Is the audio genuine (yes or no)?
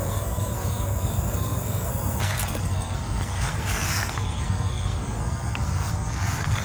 no